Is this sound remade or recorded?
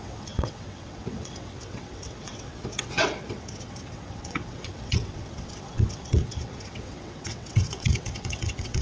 remade